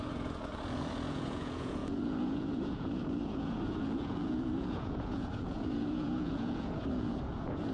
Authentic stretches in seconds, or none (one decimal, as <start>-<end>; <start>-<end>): none